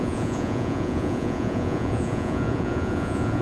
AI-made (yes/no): yes